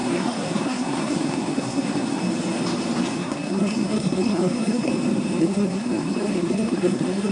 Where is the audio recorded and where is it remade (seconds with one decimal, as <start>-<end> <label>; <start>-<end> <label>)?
0.0-2.2 remade; 2.2-3.2 recorded; 3.2-4.9 remade; 4.9-5.4 recorded; 5.4-7.3 remade